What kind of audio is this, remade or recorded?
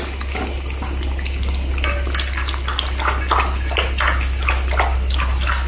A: recorded